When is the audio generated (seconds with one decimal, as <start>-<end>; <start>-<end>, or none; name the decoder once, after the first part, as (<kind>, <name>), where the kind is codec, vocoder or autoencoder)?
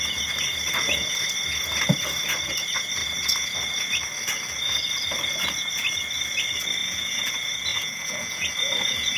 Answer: 6.8-7.3 (vocoder, Vocos); 7.7-8.5